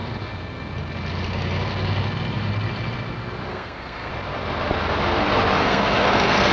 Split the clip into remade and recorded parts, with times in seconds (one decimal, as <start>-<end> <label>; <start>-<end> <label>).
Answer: 0.0-3.5 recorded; 3.5-4.1 remade; 4.1-5.6 recorded; 5.6-6.5 remade